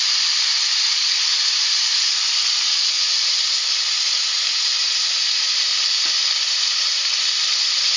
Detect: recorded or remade recorded